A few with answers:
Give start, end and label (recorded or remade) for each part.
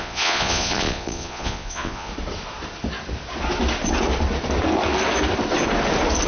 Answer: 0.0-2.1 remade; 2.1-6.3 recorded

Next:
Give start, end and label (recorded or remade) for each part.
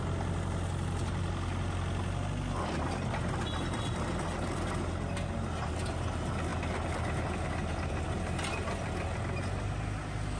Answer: 0.0-10.4 recorded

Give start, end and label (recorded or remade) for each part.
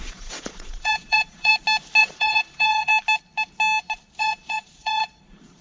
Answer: 0.0-1.5 remade; 1.5-2.0 recorded; 2.0-2.9 remade; 2.9-4.2 recorded; 4.2-5.6 remade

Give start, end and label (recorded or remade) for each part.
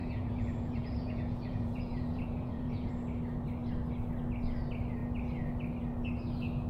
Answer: 0.0-2.9 remade; 2.9-6.7 recorded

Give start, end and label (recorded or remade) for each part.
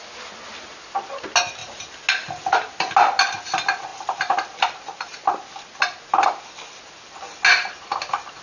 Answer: 0.0-8.4 recorded